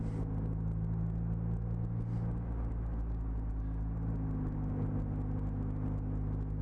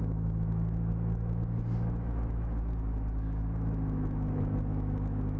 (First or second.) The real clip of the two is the first